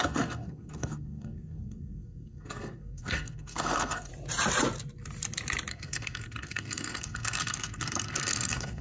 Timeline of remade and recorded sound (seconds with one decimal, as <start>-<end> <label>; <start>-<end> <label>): 0.0-4.1 remade; 4.1-5.7 recorded; 5.7-8.8 remade